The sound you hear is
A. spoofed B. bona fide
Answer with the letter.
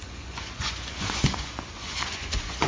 A